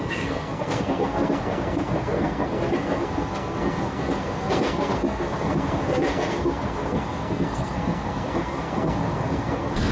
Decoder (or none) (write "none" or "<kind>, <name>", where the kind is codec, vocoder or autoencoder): codec, SNAC